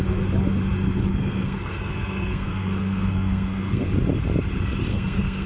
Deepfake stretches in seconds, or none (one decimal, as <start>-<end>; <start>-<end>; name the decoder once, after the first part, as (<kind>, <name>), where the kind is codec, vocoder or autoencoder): 1.1-3.9 (codec, SNAC); 4.9-5.5